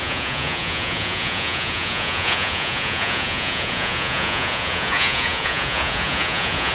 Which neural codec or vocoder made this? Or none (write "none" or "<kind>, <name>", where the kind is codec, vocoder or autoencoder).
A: vocoder, Vocos